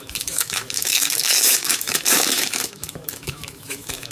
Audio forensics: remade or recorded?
remade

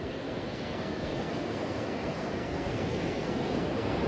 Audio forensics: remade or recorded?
remade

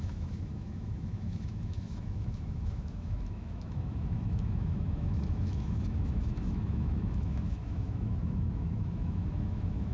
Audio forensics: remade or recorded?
remade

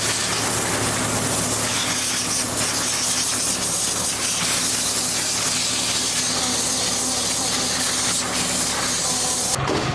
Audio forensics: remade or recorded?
recorded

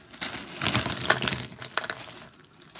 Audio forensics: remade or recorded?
recorded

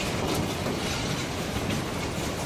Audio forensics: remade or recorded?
remade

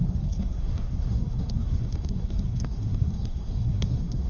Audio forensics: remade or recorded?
remade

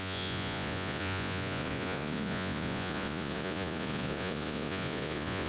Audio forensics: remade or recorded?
remade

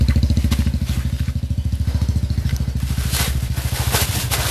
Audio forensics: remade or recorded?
recorded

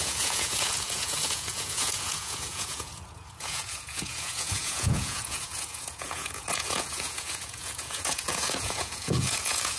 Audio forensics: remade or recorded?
remade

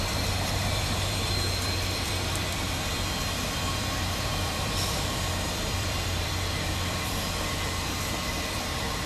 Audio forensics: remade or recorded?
remade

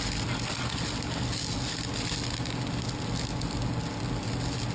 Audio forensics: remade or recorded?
recorded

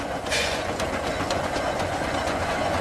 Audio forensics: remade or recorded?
remade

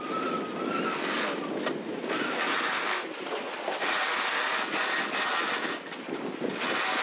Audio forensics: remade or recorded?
recorded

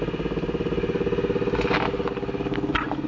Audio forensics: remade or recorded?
recorded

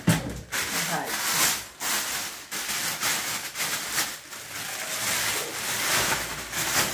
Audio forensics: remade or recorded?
recorded